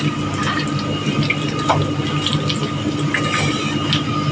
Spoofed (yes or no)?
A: no